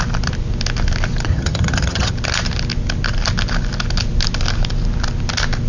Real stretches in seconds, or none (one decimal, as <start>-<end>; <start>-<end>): 0.0-1.3; 2.1-5.7